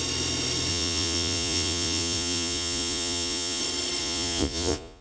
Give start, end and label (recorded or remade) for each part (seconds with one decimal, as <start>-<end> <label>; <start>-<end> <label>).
0.0-0.7 recorded; 0.7-3.6 remade; 3.6-4.0 recorded; 4.0-5.0 remade